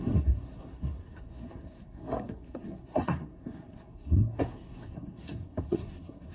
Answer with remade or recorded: remade